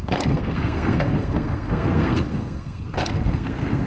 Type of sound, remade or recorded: remade